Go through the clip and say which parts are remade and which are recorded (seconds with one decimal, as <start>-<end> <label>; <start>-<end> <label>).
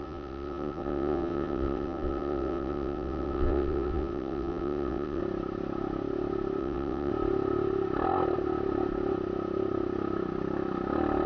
0.0-5.2 remade; 5.2-6.6 recorded; 6.6-7.1 remade; 7.1-11.3 recorded